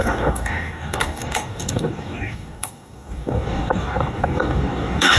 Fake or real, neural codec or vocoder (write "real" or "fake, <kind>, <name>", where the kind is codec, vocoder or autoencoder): fake, codec, DAC